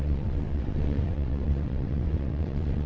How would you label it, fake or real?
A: fake